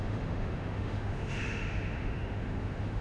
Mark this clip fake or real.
fake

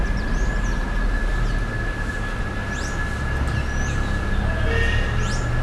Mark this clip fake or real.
real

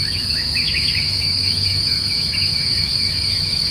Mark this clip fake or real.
fake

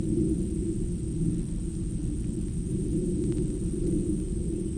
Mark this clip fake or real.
real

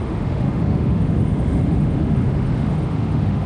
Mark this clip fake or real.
fake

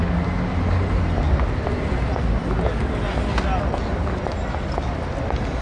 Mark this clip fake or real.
real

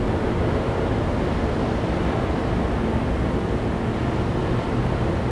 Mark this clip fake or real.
real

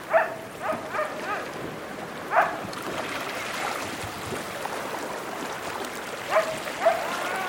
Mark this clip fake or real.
real